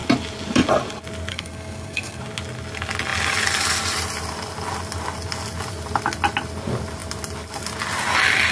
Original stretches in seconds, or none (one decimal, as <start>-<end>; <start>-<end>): 0.0-1.3; 2.2-8.5